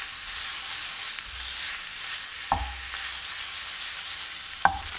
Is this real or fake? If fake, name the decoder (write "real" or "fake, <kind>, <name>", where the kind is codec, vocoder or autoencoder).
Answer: real